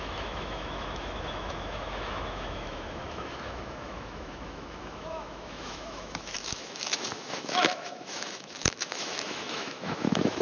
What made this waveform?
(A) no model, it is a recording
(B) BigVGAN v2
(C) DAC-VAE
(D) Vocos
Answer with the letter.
C